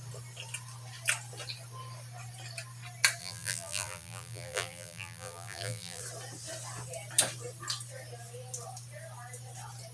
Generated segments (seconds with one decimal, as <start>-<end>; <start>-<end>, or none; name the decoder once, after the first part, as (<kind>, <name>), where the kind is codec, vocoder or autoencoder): 3.2-6.0 (vocoder, BigVGAN v2)